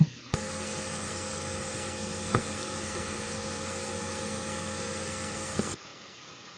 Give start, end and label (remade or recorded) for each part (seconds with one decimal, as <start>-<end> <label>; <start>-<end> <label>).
0.0-6.6 remade